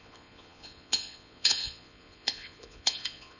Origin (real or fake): fake